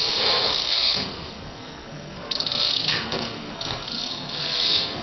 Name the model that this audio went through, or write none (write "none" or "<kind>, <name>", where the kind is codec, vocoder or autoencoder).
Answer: codec, SNAC